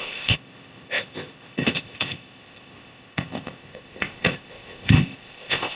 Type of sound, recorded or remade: remade